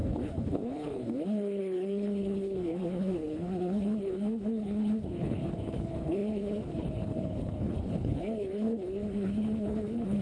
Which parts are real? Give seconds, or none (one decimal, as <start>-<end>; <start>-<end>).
none